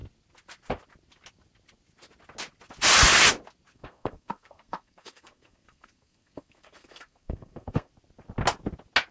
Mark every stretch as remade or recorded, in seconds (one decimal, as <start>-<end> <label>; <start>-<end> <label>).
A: 0.0-3.7 recorded; 3.7-7.9 remade; 7.9-9.1 recorded